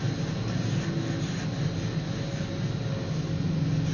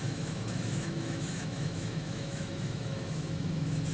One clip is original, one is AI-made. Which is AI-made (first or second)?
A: second